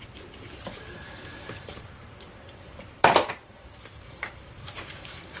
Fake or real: fake